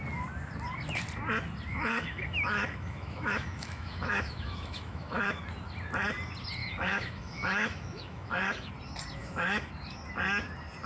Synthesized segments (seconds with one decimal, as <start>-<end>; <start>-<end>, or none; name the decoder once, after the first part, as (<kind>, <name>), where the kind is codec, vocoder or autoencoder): 1.7-5.4 (autoencoder, DAC-VAE); 6.6-8.7; 9.2-9.7

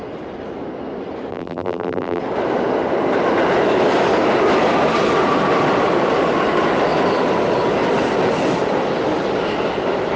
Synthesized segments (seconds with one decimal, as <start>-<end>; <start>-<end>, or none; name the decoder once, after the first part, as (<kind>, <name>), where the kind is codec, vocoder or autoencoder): 1.3-2.2 (vocoder, BigVGAN v2)

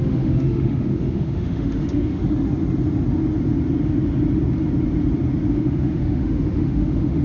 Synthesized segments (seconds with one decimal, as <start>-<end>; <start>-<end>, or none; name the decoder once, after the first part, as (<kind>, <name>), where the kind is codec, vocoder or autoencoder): 0.0-2.2 (autoencoder, DAC-VAE); 5.5-7.2

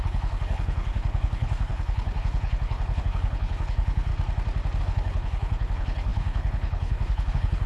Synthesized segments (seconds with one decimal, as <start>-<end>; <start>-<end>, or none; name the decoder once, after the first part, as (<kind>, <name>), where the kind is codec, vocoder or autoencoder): 0.0-4.1 (codec, HILCodec); 4.8-7.7

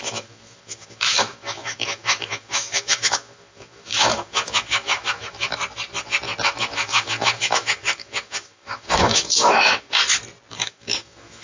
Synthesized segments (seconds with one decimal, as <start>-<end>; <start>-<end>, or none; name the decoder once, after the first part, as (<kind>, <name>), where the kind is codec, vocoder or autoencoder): 0.0-5.6 (autoencoder, DAC-VAE); 6.4-10.0; 10.5-11.4